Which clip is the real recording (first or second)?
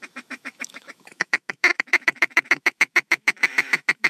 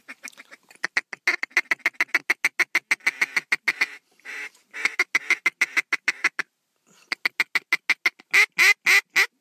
second